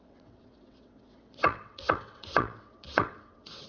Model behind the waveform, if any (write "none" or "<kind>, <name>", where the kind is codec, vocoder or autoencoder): vocoder, WaveNeXt